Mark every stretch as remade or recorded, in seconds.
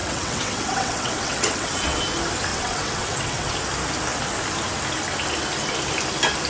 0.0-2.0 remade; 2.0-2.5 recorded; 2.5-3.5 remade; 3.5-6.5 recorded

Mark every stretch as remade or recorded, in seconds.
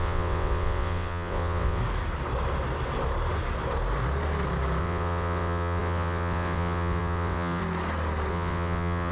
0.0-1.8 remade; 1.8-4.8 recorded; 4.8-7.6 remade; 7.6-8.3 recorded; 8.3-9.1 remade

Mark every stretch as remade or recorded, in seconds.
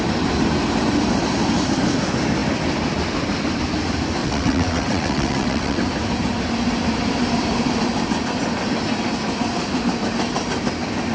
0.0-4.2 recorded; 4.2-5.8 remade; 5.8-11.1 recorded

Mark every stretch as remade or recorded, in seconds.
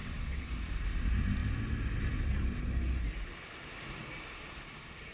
0.0-0.5 remade; 0.5-5.1 recorded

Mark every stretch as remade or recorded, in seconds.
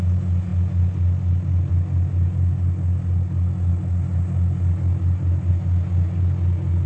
0.0-6.9 recorded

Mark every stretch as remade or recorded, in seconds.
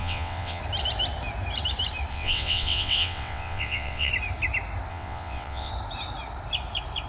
0.0-0.6 remade; 0.6-2.1 recorded; 2.1-4.1 remade; 4.1-4.9 recorded; 4.9-5.7 remade; 5.7-7.1 recorded